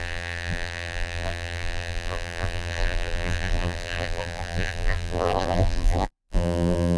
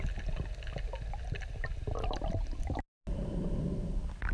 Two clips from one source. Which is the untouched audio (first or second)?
second